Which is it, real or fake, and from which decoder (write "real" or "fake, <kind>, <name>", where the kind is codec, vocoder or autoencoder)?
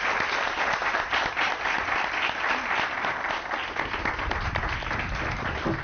real